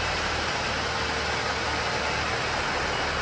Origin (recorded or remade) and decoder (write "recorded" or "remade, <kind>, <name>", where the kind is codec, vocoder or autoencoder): recorded